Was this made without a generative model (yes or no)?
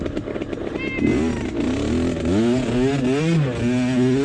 yes